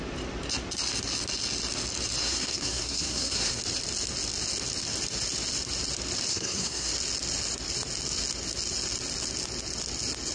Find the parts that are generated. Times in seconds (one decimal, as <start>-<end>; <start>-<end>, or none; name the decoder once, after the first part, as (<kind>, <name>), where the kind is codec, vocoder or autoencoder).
2.2-3.6 (codec, SNAC); 6.3-6.9